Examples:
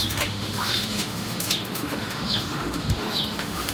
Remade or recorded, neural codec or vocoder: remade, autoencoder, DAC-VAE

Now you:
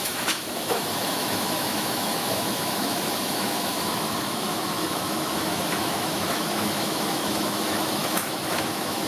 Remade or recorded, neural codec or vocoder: remade, autoencoder, DAC-VAE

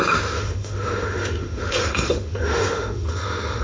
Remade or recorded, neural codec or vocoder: remade, autoencoder, DAC-VAE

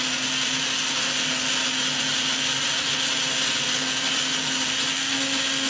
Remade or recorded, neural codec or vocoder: recorded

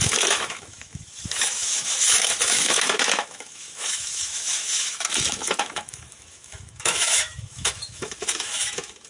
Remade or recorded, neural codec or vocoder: remade, autoencoder, DAC-VAE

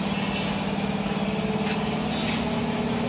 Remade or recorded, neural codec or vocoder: recorded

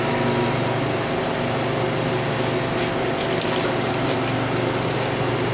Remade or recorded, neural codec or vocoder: recorded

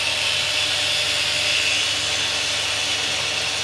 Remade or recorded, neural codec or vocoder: recorded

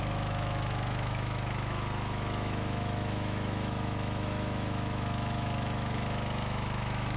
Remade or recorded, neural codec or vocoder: remade, autoencoder, DAC-VAE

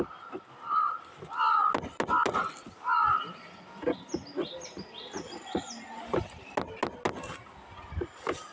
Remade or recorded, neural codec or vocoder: recorded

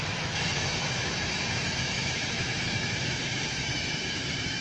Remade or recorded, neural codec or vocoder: remade, autoencoder, DAC-VAE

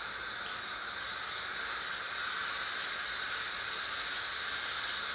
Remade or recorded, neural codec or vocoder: recorded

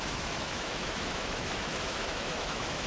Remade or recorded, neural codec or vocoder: remade, autoencoder, DAC-VAE